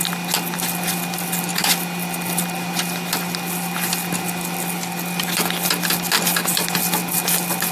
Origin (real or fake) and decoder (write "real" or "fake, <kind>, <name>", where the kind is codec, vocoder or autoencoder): real